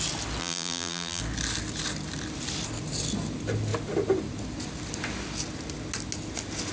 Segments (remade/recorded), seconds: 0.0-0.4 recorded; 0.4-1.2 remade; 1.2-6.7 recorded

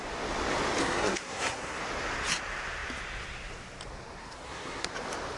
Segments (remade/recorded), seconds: 0.0-0.8 recorded; 0.8-1.8 remade; 1.8-4.2 recorded; 4.2-4.9 remade; 4.9-5.4 recorded

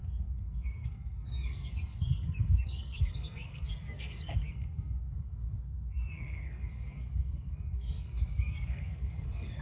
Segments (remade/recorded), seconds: 0.0-9.6 remade

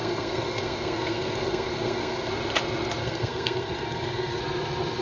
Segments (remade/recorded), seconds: 0.0-2.3 remade; 2.3-3.0 recorded; 3.0-4.4 remade; 4.4-5.0 recorded

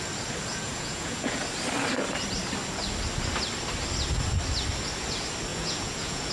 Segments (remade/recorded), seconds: 0.0-0.5 recorded; 0.5-1.4 remade; 1.4-5.5 recorded; 5.5-6.3 remade

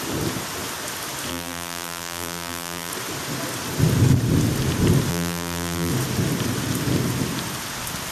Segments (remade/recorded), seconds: 0.0-1.3 recorded; 1.3-2.9 remade; 2.9-5.1 recorded; 5.1-5.9 remade; 5.9-8.1 recorded

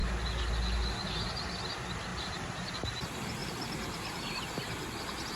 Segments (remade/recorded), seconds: 0.0-2.1 recorded; 2.1-2.9 remade; 2.9-3.4 recorded; 3.4-4.2 remade; 4.2-5.4 recorded

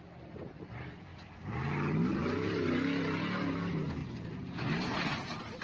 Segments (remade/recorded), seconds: 0.0-5.6 recorded